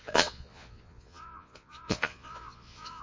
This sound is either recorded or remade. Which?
remade